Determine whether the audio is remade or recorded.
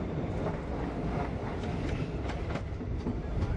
recorded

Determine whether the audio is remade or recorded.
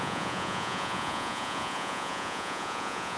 remade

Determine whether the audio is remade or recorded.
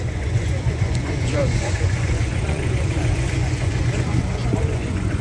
remade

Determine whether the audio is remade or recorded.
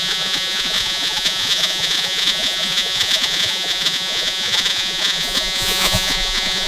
remade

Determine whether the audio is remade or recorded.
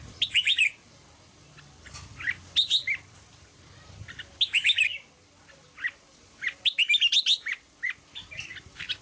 recorded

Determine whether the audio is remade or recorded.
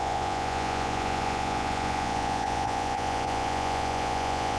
remade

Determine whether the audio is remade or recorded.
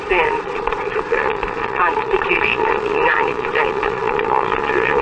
remade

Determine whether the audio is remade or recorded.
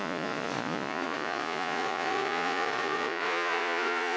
remade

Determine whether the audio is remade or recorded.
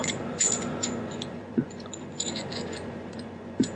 remade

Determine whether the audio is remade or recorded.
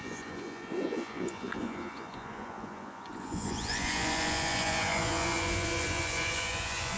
remade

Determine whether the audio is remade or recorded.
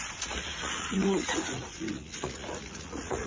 remade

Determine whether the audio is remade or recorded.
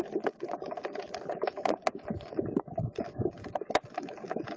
recorded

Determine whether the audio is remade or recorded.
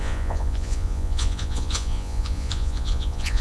remade